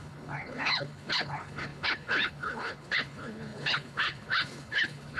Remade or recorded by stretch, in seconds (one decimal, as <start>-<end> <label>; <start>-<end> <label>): 0.0-5.2 remade